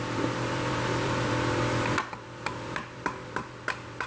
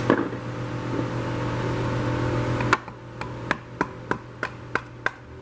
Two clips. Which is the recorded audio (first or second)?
second